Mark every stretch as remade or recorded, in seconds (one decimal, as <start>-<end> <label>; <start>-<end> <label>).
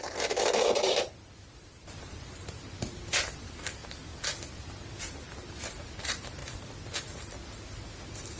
0.0-3.8 remade; 3.8-5.0 recorded; 5.0-6.4 remade; 6.4-8.0 recorded; 8.0-8.4 remade